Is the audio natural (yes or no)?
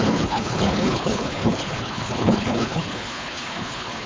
no